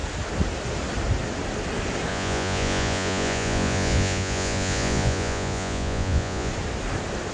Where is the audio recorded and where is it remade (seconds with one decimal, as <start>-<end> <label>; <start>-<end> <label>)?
0.0-2.1 recorded; 2.1-6.5 remade; 6.5-7.3 recorded